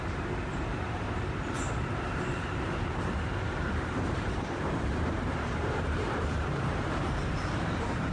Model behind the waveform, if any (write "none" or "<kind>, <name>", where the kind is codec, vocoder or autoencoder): vocoder, BigVGAN v2